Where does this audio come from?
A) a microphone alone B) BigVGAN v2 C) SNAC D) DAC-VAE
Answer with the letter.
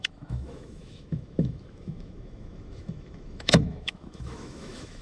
D